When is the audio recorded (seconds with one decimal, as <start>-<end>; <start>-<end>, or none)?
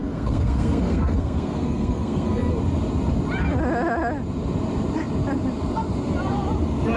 2.5-7.0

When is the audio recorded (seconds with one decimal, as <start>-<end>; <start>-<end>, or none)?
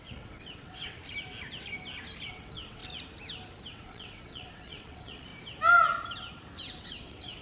1.0-2.3; 2.8-3.7; 5.3-6.8